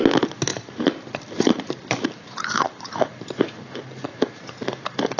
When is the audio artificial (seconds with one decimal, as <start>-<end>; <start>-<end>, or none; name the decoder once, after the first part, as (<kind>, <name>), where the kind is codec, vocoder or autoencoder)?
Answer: 0.5-3.6 (vocoder, BigVGAN v2); 4.1-4.8